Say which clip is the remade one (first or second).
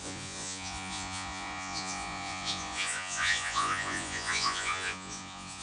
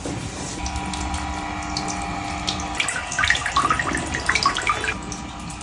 first